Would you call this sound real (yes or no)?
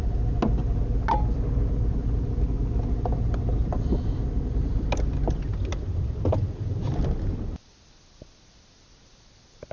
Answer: yes